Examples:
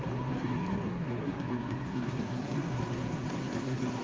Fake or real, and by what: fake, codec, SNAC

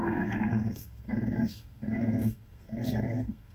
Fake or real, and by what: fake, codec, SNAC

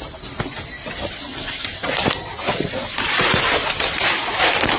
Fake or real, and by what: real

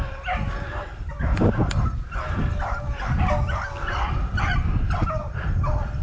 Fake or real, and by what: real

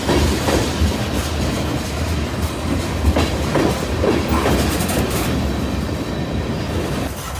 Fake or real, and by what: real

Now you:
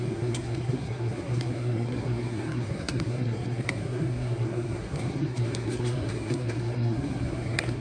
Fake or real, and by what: fake, codec, SNAC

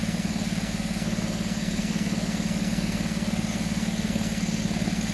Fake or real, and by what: fake, codec, SNAC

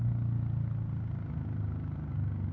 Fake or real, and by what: real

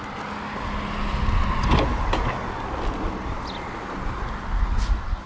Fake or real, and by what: real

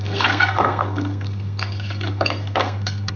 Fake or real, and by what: fake, codec, SNAC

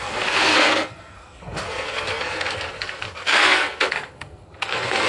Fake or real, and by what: fake, codec, SNAC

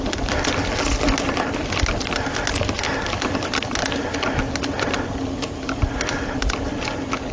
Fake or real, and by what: real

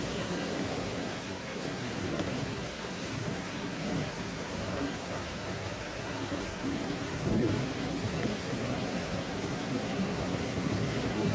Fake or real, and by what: fake, codec, SNAC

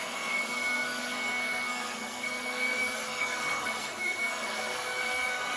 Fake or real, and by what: fake, codec, SNAC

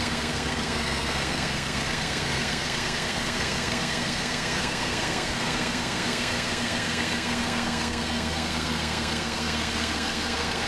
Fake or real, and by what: fake, codec, SNAC